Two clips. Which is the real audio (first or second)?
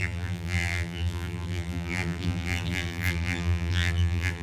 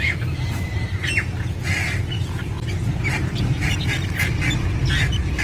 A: second